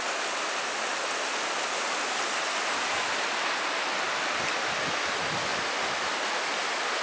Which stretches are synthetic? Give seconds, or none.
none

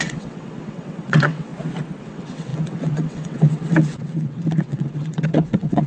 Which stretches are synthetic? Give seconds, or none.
0.0-1.5 (vocoder, WaveNeXt); 2.0-5.9

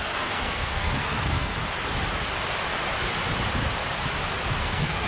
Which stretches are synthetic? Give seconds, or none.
0.0-1.5 (codec, SNAC); 4.6-5.1

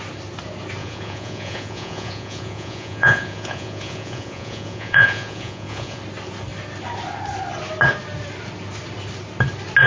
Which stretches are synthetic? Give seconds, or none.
0.8-6.0 (vocoder, Vocos)

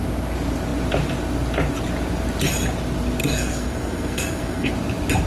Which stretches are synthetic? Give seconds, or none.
3.2-4.7 (codec, SNAC)

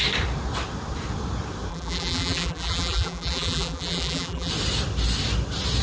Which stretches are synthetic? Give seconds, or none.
1.7-4.5 (vocoder, BigVGAN v2)

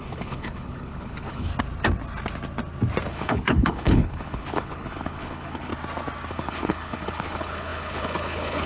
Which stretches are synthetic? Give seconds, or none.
0.0-1.5 (codec, HILCodec); 3.1-5.7; 6.3-8.7